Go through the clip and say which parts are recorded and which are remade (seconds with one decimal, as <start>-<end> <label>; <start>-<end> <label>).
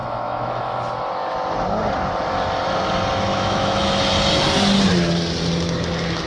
0.0-0.8 remade; 0.8-3.3 recorded; 3.3-3.9 remade; 3.9-6.3 recorded